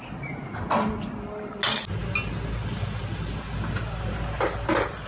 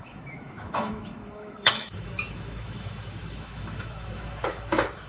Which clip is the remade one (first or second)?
second